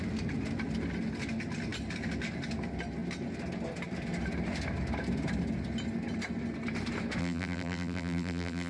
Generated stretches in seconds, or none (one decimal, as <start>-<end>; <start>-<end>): 7.2-8.7

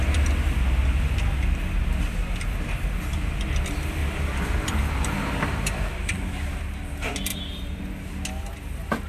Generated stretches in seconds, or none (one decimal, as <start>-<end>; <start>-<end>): 4.0-6.6; 7.3-7.8

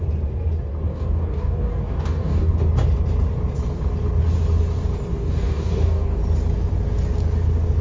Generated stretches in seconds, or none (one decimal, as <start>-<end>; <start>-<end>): 0.9-2.5; 5.1-6.2

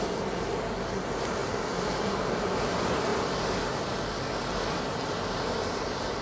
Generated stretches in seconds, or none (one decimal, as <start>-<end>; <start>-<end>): 3.1-3.9

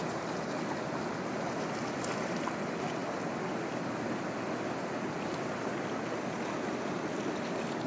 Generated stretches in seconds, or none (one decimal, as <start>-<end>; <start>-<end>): none

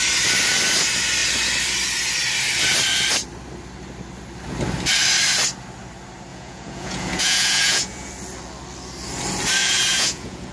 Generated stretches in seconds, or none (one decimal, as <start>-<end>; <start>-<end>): 6.3-8.1; 9.6-10.5